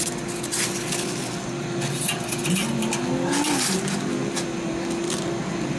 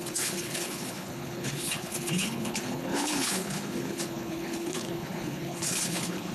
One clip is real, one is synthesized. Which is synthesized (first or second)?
second